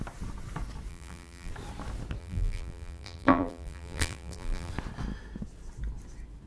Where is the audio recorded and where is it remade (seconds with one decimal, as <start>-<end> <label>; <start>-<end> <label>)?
0.0-0.9 recorded; 0.9-1.5 remade; 1.5-2.2 recorded; 2.2-4.7 remade; 4.7-6.5 recorded

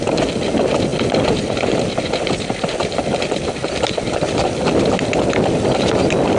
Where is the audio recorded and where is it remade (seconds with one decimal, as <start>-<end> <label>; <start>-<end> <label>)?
0.0-0.9 recorded; 0.9-4.7 remade; 4.7-6.4 recorded